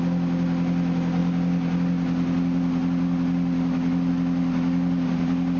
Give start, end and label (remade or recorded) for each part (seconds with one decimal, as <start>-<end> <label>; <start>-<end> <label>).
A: 0.0-5.6 recorded